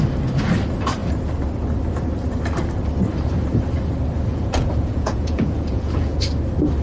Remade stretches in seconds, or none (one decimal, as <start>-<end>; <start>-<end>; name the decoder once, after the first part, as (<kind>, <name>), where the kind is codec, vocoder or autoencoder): 4.3-6.2 (vocoder, Vocos)